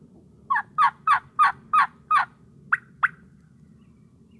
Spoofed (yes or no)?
no